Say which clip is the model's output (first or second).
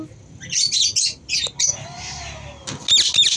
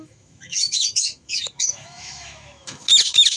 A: second